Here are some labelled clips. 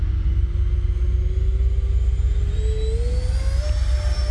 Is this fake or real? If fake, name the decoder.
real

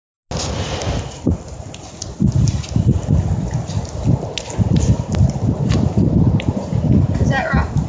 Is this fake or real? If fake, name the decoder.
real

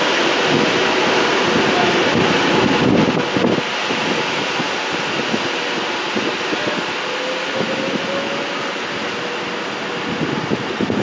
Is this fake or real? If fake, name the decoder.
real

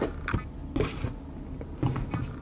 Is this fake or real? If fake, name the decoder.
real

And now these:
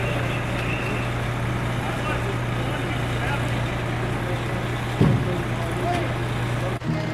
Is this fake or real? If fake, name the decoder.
real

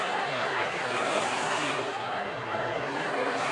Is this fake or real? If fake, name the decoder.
fake, codec, SNAC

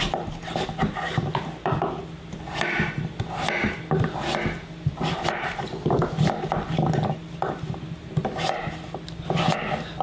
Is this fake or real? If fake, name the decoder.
real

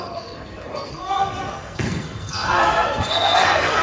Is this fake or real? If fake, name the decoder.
fake, codec, SNAC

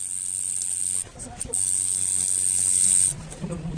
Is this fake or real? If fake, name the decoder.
real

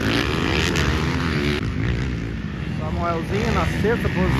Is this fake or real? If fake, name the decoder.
real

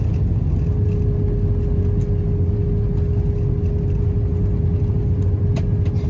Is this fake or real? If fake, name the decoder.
real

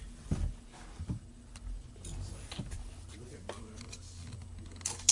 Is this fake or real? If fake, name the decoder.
real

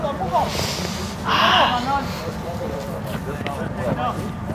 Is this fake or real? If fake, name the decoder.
real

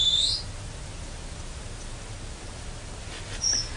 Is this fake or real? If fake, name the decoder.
real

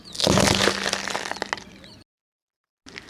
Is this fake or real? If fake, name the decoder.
real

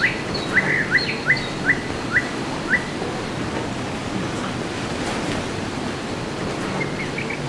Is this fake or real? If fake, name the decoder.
real